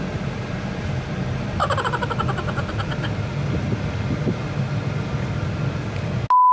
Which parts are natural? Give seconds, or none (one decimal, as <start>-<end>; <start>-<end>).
0.0-6.5